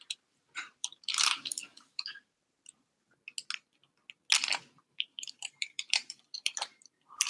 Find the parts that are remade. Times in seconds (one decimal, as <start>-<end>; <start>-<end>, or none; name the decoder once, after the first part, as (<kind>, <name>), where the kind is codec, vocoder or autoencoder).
0.0-1.6 (vocoder, BigVGAN v2); 4.8-7.3